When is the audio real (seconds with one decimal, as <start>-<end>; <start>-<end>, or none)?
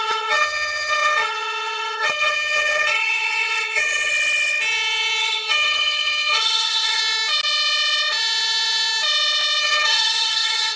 4.1-5.2; 7.0-9.6